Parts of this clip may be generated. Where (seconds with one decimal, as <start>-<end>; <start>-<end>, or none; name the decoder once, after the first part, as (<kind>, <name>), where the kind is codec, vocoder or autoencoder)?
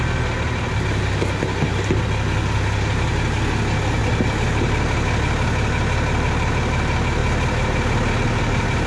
none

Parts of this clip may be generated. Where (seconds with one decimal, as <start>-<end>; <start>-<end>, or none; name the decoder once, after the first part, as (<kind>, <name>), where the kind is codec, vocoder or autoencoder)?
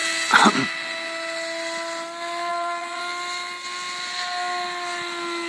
2.5-3.0 (vocoder, Vocos)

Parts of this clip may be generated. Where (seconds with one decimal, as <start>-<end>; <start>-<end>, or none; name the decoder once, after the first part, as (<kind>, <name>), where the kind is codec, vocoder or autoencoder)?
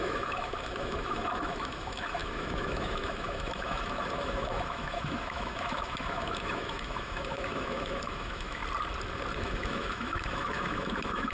0.0-8.6 (autoencoder, DAC-VAE); 9.4-11.3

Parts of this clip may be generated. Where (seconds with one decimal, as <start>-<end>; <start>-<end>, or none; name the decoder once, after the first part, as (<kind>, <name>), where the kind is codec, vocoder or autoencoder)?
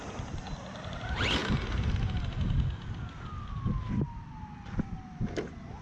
none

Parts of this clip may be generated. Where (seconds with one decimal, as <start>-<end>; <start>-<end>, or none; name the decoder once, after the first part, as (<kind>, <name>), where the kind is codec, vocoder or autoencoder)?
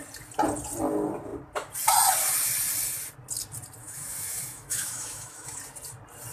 3.8-5.6 (autoencoder, DAC-VAE)